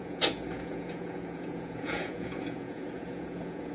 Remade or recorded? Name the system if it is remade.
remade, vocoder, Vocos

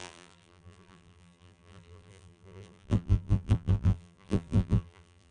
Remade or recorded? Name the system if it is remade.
remade, vocoder, BigVGAN v2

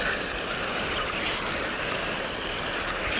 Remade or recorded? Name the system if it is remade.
recorded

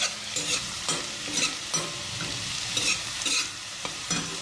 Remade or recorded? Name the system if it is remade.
recorded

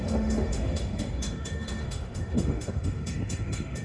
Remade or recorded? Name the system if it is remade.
remade, autoencoder, DAC-VAE